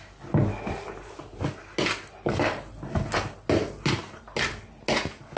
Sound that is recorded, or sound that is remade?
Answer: recorded